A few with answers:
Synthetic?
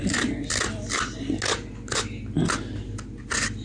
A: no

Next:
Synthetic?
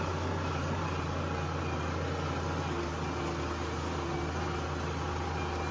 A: no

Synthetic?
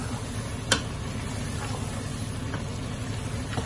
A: no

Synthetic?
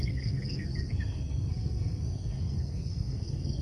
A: yes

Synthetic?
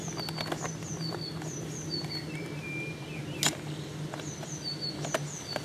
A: no